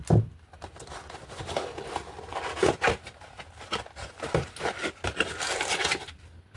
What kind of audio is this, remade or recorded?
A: recorded